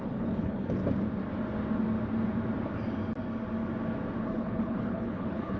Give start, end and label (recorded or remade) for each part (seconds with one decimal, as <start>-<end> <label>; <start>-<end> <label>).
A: 0.0-0.8 remade; 0.8-4.2 recorded; 4.2-5.6 remade